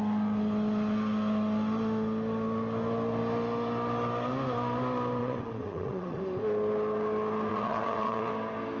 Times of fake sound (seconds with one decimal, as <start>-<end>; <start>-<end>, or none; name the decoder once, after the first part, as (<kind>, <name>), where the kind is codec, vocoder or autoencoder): 5.2-6.2 (vocoder, WaveNeXt); 7.5-8.3

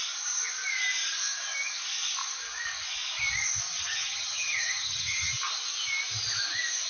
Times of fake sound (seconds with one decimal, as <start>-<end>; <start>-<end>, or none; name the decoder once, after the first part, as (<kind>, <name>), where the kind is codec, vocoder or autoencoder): 3.8-5.3 (vocoder, HiFi-GAN)

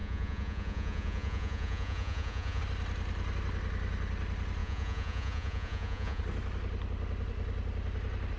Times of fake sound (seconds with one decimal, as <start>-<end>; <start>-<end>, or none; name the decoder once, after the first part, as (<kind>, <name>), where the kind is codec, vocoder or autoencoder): 0.0-2.6 (vocoder, Vocos); 4.6-6.2

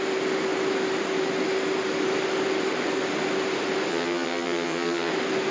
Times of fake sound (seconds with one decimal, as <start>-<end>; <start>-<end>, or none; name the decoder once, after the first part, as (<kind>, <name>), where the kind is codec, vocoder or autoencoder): 3.9-5.1 (vocoder, HiFi-GAN)

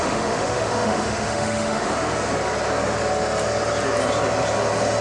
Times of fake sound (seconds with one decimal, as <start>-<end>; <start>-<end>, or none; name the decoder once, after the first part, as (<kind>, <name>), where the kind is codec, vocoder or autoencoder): 0.0-1.9 (autoencoder, DAC-VAE)